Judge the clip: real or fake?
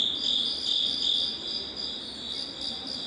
real